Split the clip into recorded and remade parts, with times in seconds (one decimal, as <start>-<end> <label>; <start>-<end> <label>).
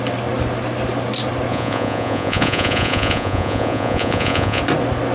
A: 0.0-1.5 recorded; 1.5-4.6 remade; 4.6-5.1 recorded